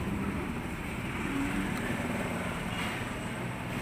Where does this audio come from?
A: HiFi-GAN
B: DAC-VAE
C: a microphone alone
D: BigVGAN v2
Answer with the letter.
D